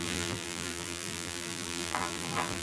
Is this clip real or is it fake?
fake